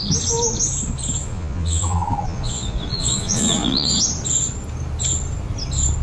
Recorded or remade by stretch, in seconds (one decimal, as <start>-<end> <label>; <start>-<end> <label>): 0.0-1.2 recorded; 1.2-4.0 remade; 4.0-6.0 recorded

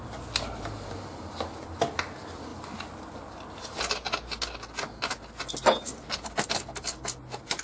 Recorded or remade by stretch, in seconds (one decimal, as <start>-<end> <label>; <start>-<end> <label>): 0.0-7.6 recorded

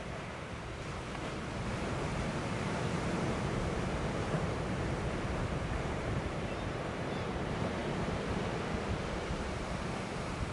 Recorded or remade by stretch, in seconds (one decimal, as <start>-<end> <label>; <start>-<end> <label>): 0.0-1.0 recorded; 1.0-7.8 remade; 7.8-9.1 recorded; 9.1-10.5 remade

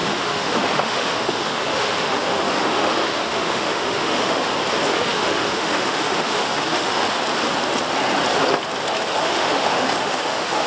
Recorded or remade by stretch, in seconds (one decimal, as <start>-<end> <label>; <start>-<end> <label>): 0.0-4.5 remade; 4.5-5.0 recorded; 5.0-7.0 remade; 7.0-9.1 recorded; 9.1-10.7 remade